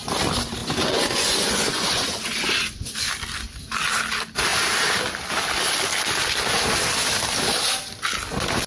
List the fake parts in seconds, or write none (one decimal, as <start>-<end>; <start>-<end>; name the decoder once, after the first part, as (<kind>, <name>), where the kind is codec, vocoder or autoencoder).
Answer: 0.6-3.1 (vocoder, Vocos)